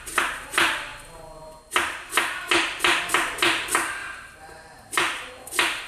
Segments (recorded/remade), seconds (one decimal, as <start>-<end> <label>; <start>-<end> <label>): 0.0-4.0 recorded; 4.0-5.3 remade; 5.3-5.9 recorded